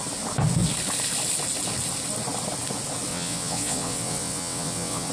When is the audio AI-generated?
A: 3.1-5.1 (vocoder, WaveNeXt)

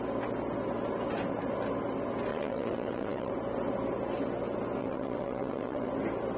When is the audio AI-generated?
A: 2.3-3.3 (vocoder, WaveNeXt); 4.8-5.9

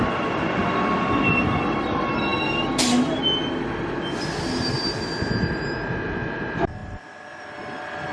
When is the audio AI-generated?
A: none

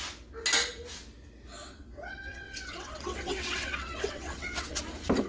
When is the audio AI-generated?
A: 1.6-4.8 (vocoder, WaveNeXt)

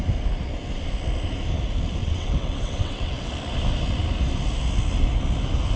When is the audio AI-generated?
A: 2.0-3.3 (vocoder, WaveNeXt)

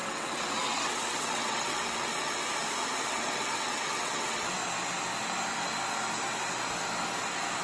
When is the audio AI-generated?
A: 0.0-2.4 (vocoder, WaveNeXt); 3.1-4.6